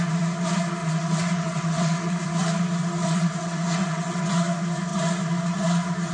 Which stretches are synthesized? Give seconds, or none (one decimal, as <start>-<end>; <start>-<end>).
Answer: 0.8-2.2; 3.0-4.2